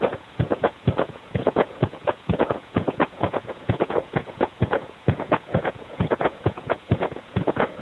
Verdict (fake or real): fake